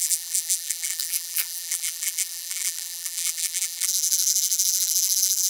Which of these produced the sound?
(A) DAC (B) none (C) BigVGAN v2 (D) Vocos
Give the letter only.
C